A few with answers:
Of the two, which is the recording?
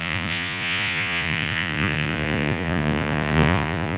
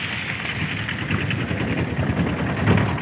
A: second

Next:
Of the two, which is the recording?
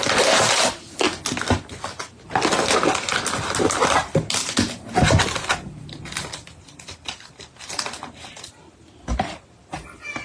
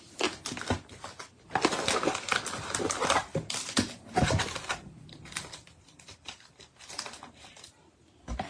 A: first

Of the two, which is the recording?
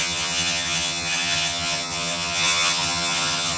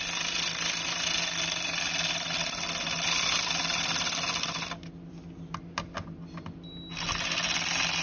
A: second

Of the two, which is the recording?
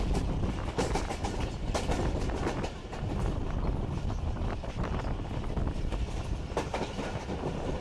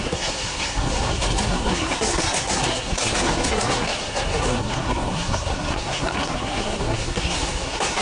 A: first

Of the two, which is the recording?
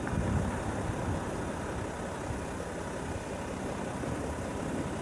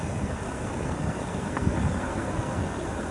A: first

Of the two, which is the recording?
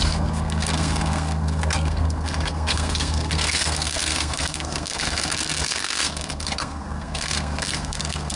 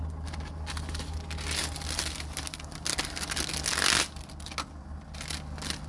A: second